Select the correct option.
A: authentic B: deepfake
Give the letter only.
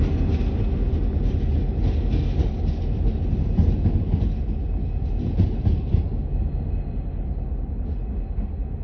A